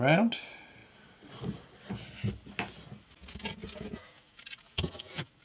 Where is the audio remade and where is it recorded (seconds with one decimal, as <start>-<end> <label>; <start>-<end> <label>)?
0.0-5.4 recorded